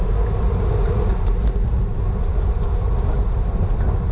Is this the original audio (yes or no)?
yes